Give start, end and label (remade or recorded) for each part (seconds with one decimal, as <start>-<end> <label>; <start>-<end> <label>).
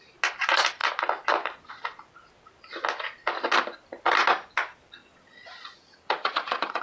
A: 0.0-5.0 recorded; 5.0-6.8 remade